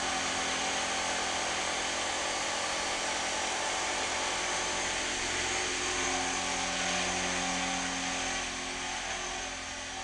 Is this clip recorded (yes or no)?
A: yes